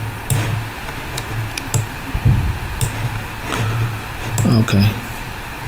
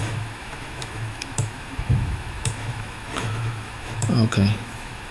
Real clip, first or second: first